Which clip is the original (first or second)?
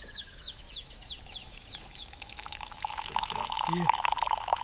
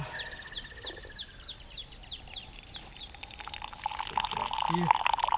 second